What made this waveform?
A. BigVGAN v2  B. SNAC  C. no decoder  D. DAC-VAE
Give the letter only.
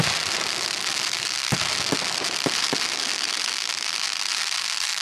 C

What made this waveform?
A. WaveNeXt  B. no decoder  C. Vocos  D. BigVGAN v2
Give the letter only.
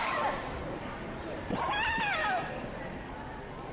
B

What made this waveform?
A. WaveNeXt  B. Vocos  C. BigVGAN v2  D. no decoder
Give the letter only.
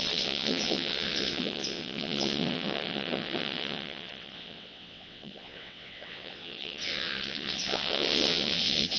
A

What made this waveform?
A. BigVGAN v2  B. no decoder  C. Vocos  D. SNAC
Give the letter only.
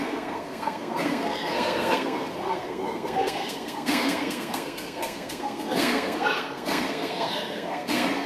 D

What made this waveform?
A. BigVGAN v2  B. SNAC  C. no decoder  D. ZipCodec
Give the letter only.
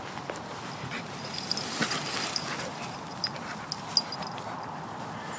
C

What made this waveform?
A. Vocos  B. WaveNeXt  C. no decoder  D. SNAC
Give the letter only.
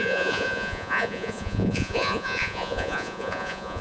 A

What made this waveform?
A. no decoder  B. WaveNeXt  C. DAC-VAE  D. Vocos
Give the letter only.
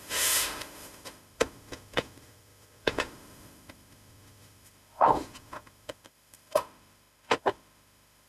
C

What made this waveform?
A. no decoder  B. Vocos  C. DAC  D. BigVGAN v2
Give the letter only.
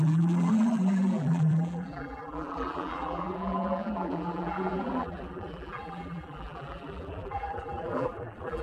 D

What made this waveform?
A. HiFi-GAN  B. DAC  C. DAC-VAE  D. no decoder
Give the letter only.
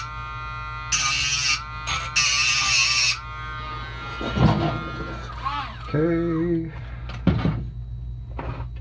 D